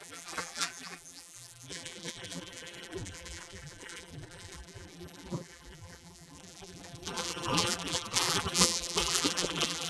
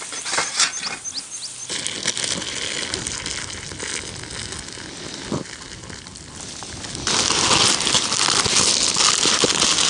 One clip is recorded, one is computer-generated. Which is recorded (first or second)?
second